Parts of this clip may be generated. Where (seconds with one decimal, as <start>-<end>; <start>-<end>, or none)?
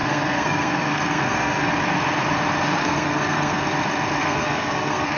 0.0-1.7; 2.8-3.6; 4.2-5.2